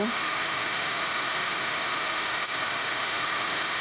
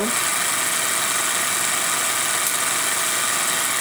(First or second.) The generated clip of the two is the first